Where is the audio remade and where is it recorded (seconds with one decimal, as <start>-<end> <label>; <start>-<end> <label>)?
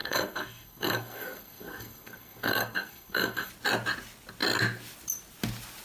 0.0-3.5 remade; 3.5-5.8 recorded